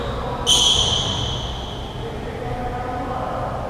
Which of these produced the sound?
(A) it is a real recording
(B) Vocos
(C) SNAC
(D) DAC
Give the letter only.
A